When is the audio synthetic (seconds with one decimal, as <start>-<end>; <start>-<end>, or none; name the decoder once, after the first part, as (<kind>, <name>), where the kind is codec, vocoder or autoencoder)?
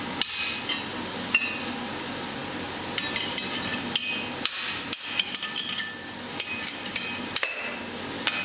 none